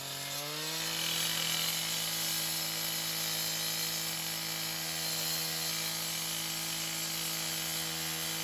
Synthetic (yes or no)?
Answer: no